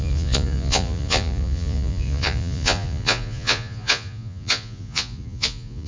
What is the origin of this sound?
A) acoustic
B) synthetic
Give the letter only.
B